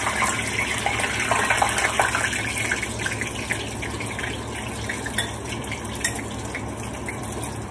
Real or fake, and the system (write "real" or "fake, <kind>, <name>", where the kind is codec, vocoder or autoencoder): real